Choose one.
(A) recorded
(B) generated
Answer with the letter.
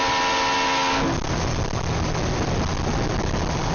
A